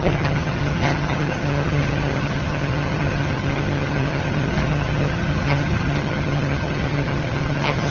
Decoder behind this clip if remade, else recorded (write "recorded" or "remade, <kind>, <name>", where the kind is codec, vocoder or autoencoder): remade, vocoder, HiFi-GAN